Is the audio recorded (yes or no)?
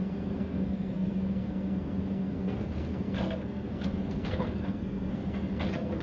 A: no